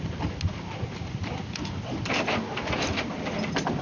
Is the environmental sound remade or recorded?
recorded